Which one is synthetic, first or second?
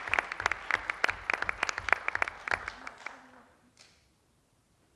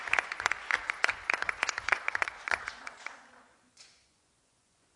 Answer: second